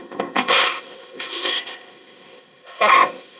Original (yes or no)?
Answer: no